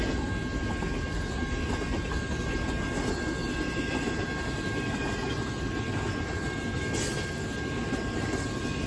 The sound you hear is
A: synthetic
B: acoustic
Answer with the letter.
B